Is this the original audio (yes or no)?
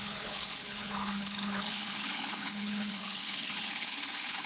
no